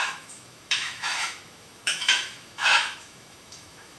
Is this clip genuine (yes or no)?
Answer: no